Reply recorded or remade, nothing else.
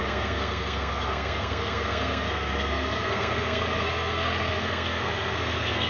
remade